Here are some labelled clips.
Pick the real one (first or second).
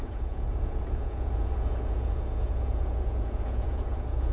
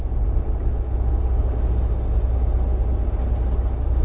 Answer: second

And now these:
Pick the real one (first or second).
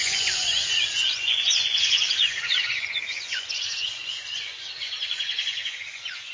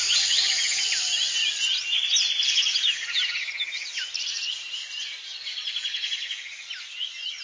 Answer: second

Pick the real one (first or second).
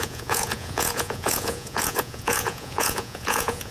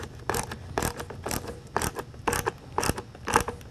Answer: second